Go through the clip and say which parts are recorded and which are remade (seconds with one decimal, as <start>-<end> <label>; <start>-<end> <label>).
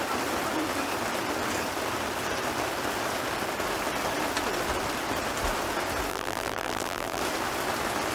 0.0-6.1 recorded; 6.1-7.2 remade; 7.2-8.1 recorded